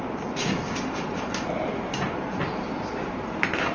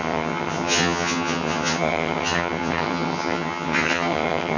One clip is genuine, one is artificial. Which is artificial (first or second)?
second